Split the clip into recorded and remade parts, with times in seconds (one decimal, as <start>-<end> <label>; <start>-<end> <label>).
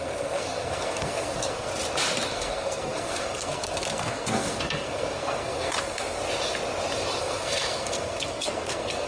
0.0-1.7 remade; 1.7-2.3 recorded; 2.3-6.2 remade; 6.2-7.2 recorded; 7.2-9.1 remade